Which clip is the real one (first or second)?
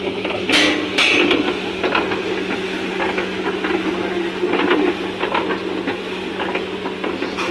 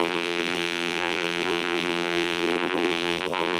first